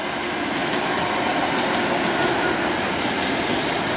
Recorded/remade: recorded